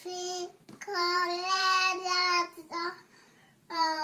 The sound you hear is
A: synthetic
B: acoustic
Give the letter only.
A